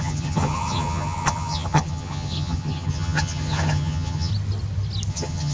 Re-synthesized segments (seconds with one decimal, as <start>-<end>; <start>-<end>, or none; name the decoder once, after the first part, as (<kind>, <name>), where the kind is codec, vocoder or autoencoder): 0.0-4.3 (vocoder, HiFi-GAN); 5.1-5.5